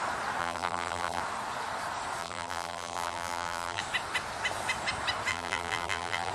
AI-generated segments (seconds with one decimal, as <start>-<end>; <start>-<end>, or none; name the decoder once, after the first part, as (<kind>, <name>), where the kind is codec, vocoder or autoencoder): 0.4-1.2 (vocoder, BigVGAN v2); 2.2-3.8; 5.3-6.3